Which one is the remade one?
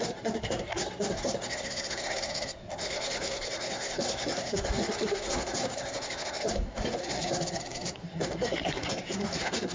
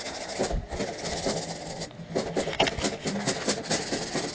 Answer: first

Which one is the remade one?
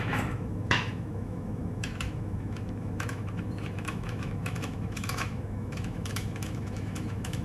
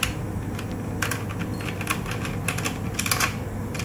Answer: first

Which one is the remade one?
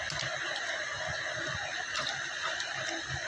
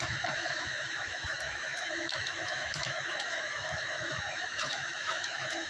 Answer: second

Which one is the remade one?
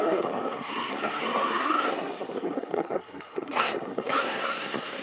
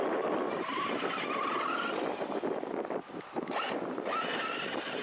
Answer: first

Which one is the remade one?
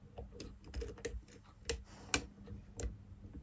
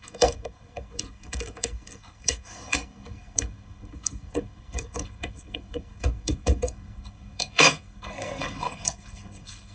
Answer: second